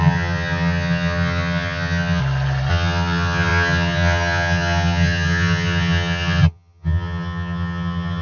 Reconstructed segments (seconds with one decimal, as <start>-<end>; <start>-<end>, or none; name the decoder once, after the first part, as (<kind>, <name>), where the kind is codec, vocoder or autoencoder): 0.0-2.2 (vocoder, HiFi-GAN); 2.7-8.2